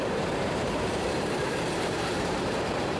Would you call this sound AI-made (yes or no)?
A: yes